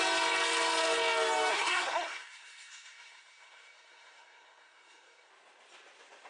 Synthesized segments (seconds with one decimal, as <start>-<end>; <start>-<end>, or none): 1.5-5.3